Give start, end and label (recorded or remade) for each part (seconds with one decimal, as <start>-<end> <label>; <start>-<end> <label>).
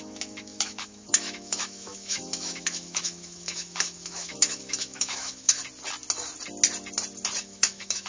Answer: 0.0-5.6 remade; 5.6-7.4 recorded; 7.4-8.1 remade